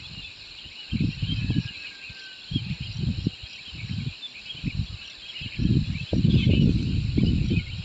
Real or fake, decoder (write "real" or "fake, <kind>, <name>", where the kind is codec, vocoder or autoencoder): real